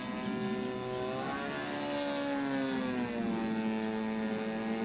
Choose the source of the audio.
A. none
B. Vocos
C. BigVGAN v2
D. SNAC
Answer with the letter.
A